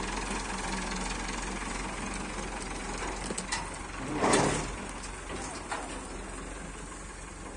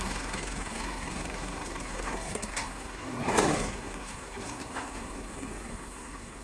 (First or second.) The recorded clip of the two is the first